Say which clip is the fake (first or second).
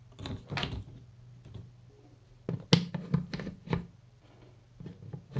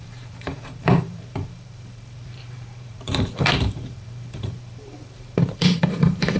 second